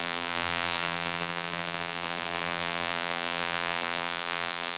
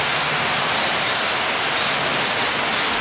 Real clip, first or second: second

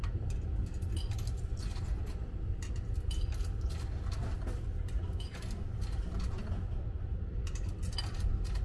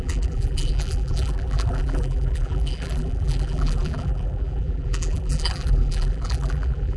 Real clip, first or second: first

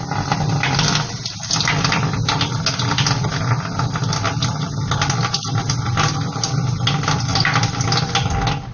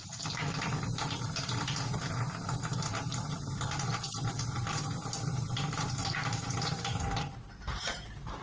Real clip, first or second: first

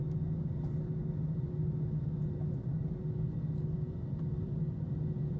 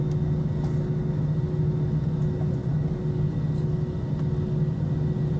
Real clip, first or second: second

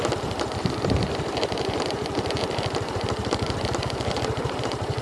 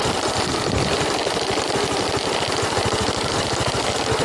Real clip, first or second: second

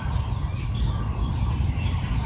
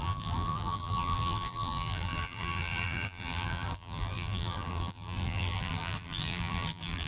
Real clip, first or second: first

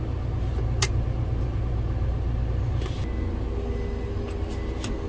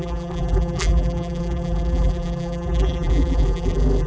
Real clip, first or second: first